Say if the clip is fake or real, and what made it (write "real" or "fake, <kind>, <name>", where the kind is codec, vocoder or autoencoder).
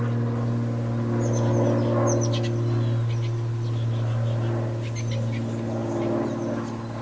real